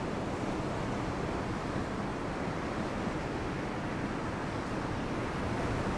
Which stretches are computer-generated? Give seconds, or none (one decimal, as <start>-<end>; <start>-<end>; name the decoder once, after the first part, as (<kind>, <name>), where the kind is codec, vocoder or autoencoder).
2.1-4.1 (vocoder, BigVGAN v2)

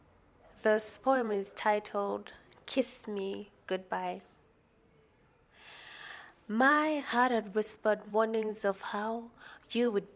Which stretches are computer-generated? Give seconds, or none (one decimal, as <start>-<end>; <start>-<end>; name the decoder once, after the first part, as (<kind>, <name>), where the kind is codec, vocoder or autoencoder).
0.0-2.1 (vocoder, BigVGAN v2); 2.8-10.2

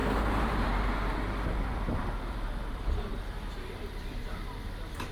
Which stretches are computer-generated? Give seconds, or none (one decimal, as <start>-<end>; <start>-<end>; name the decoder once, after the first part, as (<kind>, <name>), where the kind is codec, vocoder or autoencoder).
0.0-3.1 (vocoder, BigVGAN v2)

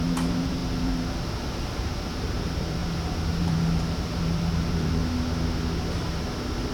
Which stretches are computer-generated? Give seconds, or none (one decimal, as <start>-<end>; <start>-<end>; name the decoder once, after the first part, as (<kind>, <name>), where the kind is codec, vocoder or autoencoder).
0.0-2.8 (vocoder, BigVGAN v2); 3.4-5.0

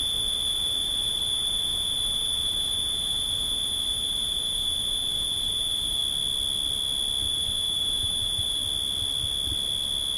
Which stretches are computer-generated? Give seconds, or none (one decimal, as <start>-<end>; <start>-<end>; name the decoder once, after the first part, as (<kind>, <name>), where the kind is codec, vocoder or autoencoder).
0.0-6.0 (vocoder, BigVGAN v2); 7.3-8.6

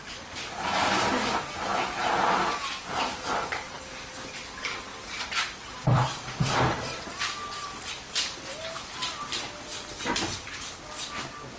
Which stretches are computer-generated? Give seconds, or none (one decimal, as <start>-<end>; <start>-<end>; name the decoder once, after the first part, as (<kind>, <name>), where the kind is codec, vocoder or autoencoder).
4.9-10.1 (vocoder, BigVGAN v2)